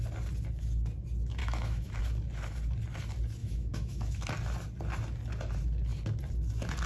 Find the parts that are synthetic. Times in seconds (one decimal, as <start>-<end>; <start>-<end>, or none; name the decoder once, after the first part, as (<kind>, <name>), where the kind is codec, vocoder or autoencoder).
1.4-2.0 (autoencoder, DAC-VAE); 3.4-4.3